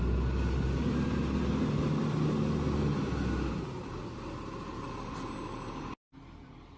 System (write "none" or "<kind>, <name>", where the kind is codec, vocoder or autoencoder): none